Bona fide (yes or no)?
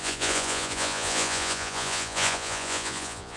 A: no